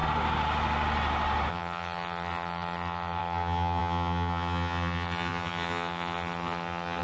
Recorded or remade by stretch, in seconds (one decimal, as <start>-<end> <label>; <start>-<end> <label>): 0.0-1.5 recorded; 1.5-7.0 remade